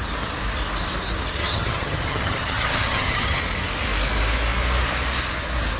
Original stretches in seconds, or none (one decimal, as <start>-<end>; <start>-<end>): 0.0-1.4; 3.4-5.8